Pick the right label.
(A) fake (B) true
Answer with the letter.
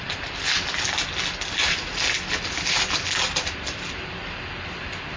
B